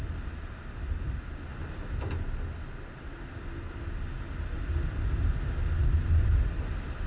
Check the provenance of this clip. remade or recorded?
recorded